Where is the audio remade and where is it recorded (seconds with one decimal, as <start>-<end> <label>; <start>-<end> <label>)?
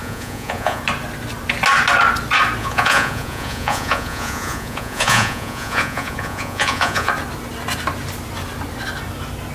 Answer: 0.0-0.8 remade; 0.8-2.6 recorded; 2.6-7.1 remade; 7.1-9.5 recorded